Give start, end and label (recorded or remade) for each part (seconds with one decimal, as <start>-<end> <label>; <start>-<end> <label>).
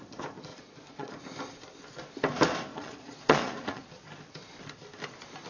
0.0-0.5 recorded; 0.5-1.1 remade; 1.1-2.7 recorded; 2.7-3.8 remade; 3.8-5.5 recorded